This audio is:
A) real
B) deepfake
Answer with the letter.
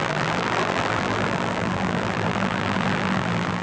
B